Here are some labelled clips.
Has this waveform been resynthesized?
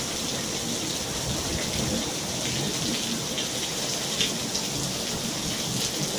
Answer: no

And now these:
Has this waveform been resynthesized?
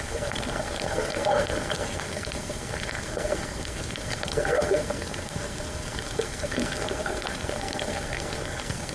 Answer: yes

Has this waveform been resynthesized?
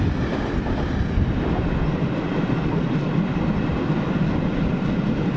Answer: no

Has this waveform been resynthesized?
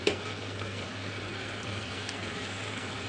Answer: yes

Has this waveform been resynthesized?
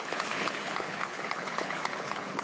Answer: yes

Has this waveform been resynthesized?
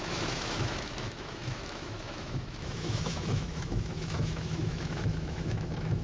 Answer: yes